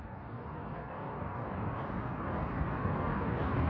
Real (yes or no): no